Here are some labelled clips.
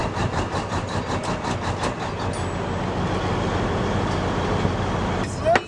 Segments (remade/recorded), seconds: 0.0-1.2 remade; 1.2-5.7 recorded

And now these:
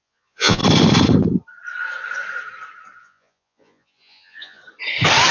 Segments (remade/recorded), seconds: 0.0-0.6 remade; 0.6-3.0 recorded; 3.0-4.6 remade; 4.6-5.3 recorded

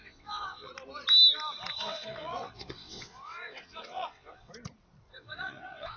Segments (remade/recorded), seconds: 0.0-0.7 remade; 0.7-1.7 recorded; 1.7-4.5 remade; 4.5-5.1 recorded; 5.1-6.0 remade

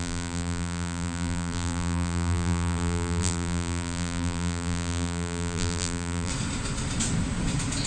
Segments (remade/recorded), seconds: 0.0-6.3 remade; 6.3-7.9 recorded

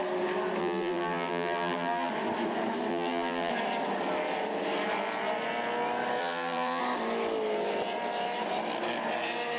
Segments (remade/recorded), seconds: 0.0-0.6 recorded; 0.6-2.1 remade; 2.1-2.9 recorded; 2.9-3.5 remade; 3.5-6.2 recorded; 6.2-6.8 remade; 6.8-9.6 recorded

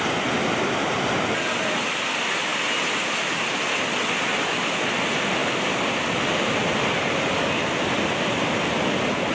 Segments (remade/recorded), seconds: 0.0-9.3 recorded

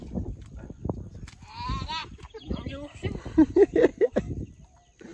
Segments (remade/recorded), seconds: 0.0-2.0 recorded; 2.0-2.7 remade; 2.7-5.1 recorded